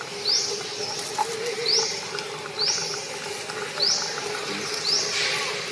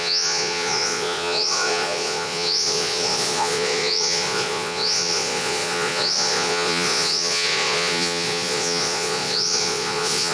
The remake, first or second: second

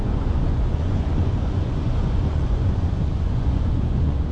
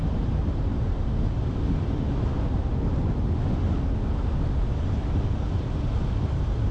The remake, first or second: first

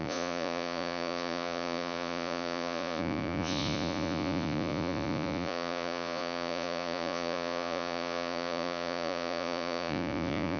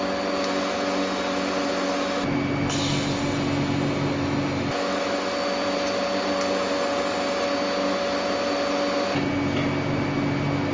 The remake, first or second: first